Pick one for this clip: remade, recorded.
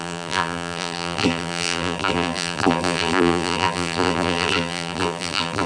remade